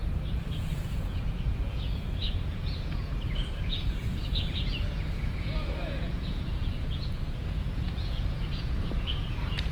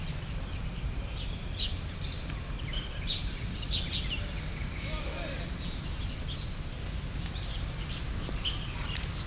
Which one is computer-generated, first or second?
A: first